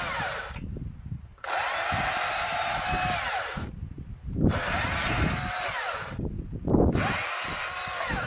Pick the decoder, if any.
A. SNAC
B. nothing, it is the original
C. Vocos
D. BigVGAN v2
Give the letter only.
B